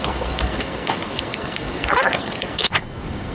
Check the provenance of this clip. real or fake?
fake